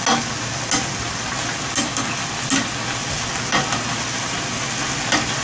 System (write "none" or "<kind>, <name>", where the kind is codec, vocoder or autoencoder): none